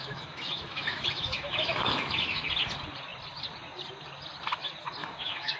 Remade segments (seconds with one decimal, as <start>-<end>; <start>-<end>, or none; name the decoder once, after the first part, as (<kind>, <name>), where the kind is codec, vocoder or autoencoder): 0.0-2.5 (autoencoder, DAC-VAE); 5.0-5.6